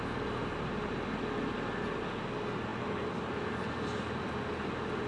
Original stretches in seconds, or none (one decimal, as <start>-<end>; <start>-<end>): 0.0-5.1